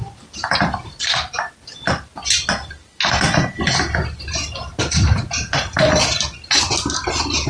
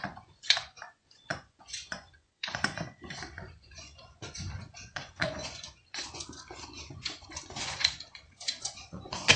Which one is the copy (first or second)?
second